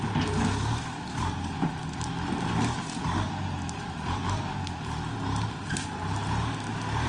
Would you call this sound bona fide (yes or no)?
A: yes